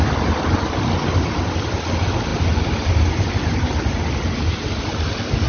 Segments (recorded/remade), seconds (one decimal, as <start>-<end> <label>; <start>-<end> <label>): 0.0-5.5 recorded